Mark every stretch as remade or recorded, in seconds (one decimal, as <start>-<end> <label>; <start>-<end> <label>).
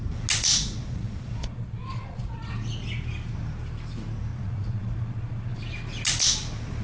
0.0-0.5 recorded; 0.5-2.5 remade; 2.5-4.3 recorded; 4.3-5.6 remade; 5.6-6.8 recorded